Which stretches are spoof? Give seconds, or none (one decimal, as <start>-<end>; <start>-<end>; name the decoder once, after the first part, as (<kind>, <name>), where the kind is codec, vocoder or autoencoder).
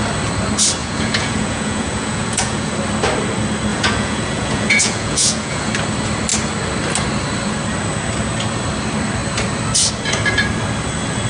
0.8-2.7 (vocoder, Vocos); 3.7-5.7